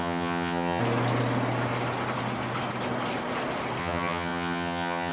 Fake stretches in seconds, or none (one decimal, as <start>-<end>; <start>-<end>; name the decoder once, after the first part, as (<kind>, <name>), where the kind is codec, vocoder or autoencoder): 0.0-0.8 (vocoder, HiFi-GAN); 3.8-5.1